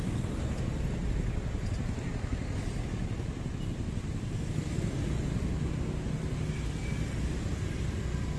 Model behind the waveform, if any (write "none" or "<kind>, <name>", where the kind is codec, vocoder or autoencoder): none